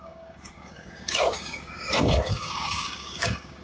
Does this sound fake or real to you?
fake